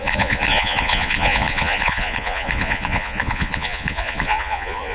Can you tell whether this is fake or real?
fake